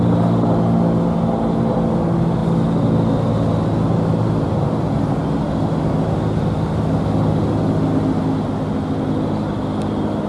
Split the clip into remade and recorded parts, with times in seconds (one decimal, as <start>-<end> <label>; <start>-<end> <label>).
0.0-10.3 recorded